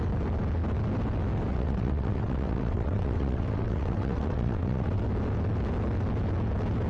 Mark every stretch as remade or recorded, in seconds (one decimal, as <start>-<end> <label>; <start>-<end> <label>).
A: 0.0-1.5 recorded; 1.5-5.0 remade; 5.0-6.9 recorded